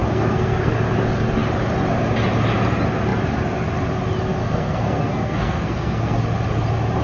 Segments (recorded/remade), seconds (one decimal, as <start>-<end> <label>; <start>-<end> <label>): 0.0-0.7 remade; 0.7-4.4 recorded; 4.4-6.2 remade; 6.2-7.0 recorded